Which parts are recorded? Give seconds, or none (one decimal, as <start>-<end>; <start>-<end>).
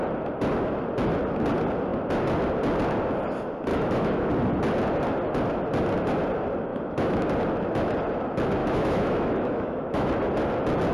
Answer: 0.0-3.7; 4.3-6.7; 7.3-8.6; 10.1-10.9